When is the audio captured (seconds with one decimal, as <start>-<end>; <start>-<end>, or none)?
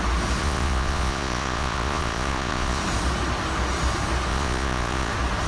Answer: 0.0-0.4; 2.8-4.3; 5.1-5.5